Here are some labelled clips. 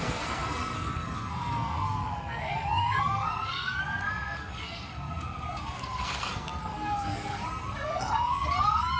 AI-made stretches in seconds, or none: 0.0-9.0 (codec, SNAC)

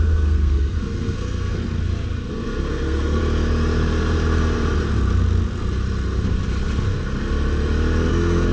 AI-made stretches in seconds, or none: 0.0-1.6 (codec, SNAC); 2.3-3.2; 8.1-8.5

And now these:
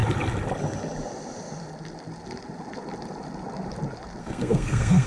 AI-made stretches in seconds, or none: 4.2-5.1 (codec, SNAC)

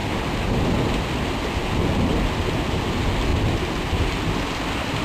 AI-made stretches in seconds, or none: none

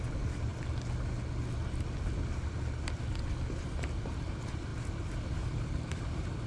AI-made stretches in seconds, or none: none

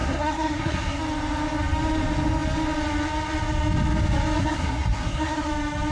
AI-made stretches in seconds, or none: 0.0-1.0 (codec, SNAC); 4.4-5.5

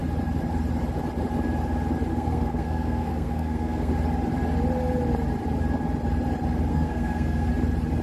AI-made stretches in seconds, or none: 2.1-3.9 (codec, SNAC); 6.7-7.5

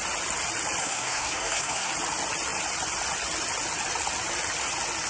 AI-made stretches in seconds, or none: 0.8-1.9 (codec, SNAC)